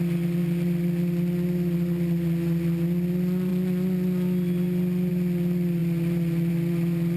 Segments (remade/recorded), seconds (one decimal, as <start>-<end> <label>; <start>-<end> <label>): 0.0-7.2 recorded